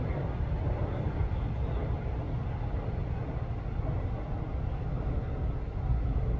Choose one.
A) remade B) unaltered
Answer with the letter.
B